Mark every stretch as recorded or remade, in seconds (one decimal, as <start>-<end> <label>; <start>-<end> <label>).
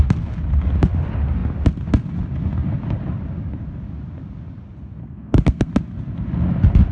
0.0-5.0 recorded; 5.0-5.7 remade; 5.7-6.9 recorded